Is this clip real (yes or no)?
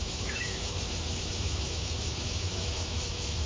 no